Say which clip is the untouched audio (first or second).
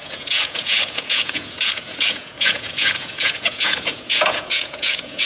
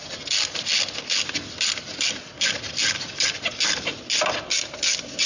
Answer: second